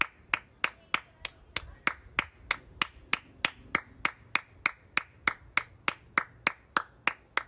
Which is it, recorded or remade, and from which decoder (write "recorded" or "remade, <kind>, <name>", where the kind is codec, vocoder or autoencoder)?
recorded